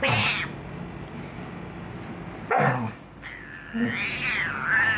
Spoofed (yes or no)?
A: no